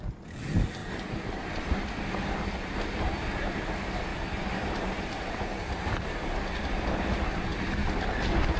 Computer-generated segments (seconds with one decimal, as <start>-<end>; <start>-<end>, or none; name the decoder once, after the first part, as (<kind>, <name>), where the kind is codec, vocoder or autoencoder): none